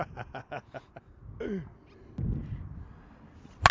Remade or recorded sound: recorded